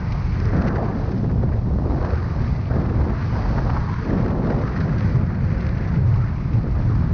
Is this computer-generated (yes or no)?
no